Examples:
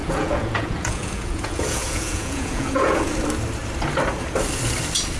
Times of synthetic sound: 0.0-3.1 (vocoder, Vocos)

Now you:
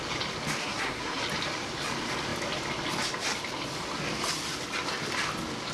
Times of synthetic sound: 0.6-1.2 (codec, SNAC)

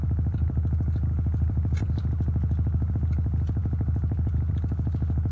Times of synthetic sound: 0.0-1.8 (vocoder, BigVGAN v2); 2.9-3.6; 4.5-5.3